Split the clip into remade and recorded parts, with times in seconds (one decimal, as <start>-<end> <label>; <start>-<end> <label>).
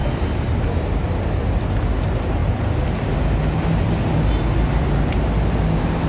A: 0.0-6.1 recorded